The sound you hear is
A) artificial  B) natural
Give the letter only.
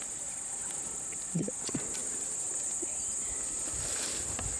B